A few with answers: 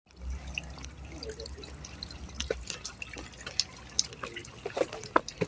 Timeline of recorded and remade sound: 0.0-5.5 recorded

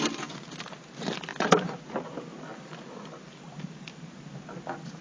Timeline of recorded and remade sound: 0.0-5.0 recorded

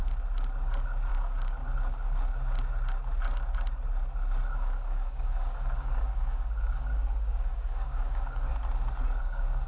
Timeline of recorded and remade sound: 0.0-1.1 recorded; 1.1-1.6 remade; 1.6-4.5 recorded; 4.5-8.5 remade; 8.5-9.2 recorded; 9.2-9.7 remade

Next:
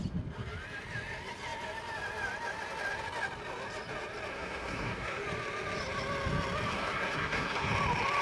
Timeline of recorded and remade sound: 0.0-4.3 recorded; 4.3-5.2 remade; 5.2-6.7 recorded; 6.7-7.7 remade; 7.7-8.2 recorded